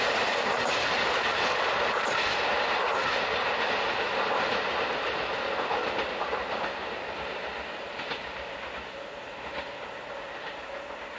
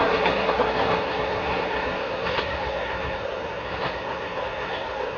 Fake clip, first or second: second